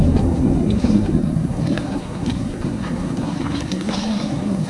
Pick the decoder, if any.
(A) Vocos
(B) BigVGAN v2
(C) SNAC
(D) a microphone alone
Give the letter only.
C